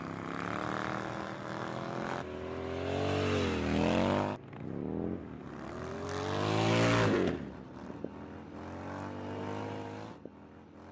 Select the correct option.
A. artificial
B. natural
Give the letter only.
B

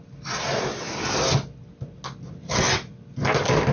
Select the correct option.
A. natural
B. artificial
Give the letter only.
A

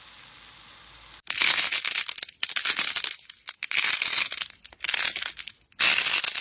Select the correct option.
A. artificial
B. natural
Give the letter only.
B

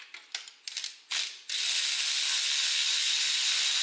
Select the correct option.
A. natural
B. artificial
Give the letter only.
A